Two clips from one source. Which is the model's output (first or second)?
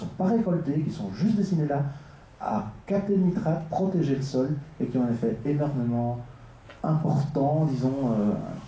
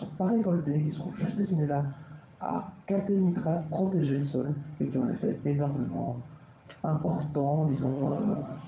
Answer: second